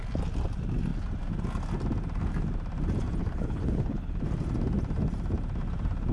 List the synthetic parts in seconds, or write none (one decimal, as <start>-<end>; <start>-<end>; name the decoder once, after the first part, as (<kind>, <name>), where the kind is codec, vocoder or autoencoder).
3.2-4.2 (codec, HILCodec)